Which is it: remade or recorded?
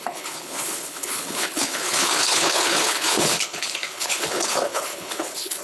remade